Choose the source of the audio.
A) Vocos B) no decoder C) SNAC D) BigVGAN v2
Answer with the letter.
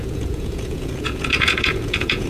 A